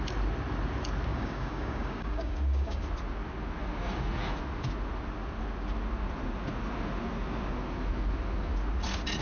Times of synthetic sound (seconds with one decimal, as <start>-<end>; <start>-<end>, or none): 1.1-2.8